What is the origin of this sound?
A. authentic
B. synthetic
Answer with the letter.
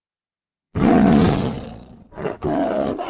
B